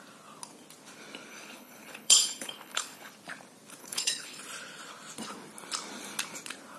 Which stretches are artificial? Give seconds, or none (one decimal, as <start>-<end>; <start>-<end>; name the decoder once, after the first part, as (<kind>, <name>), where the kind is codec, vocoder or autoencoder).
1.3-3.1 (codec, HILCodec); 3.8-4.4